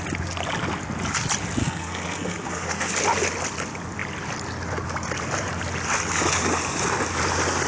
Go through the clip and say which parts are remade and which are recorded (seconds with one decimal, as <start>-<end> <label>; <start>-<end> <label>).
0.0-1.6 recorded; 1.6-2.9 remade; 2.9-7.7 recorded